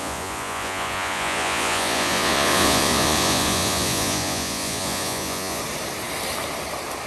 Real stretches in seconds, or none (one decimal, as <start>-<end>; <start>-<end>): 5.6-7.1